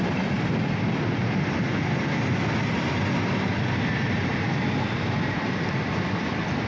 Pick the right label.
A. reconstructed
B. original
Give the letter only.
B